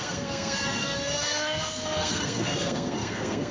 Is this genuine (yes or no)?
no